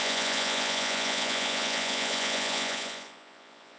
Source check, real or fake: fake